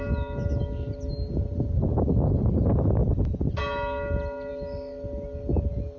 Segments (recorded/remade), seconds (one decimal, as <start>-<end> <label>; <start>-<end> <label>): 0.0-6.0 recorded